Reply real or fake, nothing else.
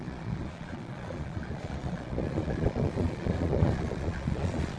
fake